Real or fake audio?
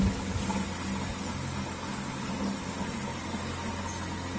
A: real